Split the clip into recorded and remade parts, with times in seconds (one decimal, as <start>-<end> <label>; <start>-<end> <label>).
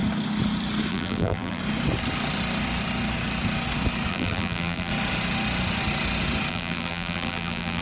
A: 0.0-0.9 recorded; 0.9-1.6 remade; 1.6-4.1 recorded; 4.1-4.9 remade; 4.9-6.5 recorded; 6.5-7.8 remade